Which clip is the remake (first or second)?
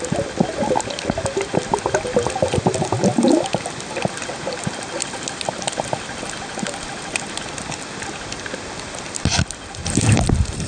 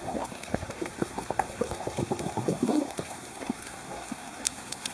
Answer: second